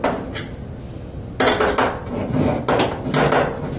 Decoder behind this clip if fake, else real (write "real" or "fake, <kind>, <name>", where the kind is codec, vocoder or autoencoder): real